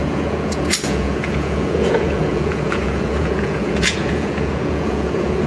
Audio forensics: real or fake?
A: fake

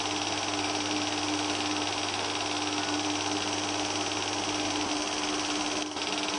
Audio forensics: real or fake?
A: real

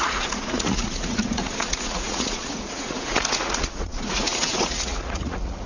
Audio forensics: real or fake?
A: fake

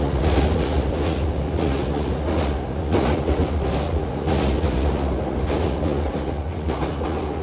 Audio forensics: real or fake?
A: fake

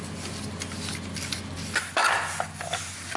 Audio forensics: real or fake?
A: real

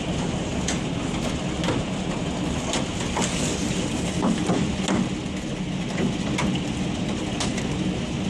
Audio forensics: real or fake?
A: real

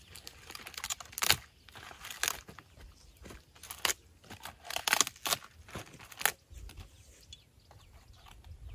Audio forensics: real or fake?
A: real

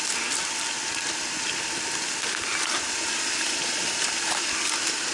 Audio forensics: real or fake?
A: real